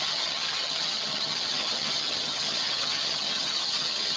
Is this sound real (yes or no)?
no